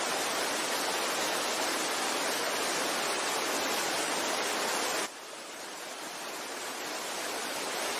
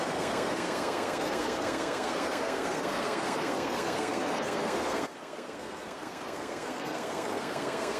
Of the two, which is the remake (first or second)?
second